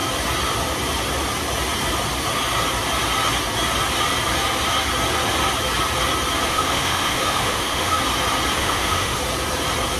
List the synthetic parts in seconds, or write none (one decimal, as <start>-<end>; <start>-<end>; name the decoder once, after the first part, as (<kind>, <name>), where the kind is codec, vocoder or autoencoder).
6.5-8.0 (autoencoder, DAC-VAE); 8.6-9.2